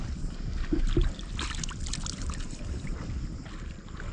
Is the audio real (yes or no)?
yes